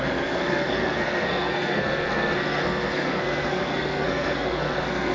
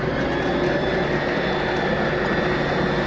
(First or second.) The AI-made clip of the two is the first